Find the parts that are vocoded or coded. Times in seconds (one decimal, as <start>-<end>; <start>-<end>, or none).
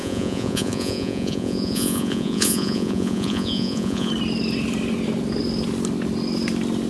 0.0-4.1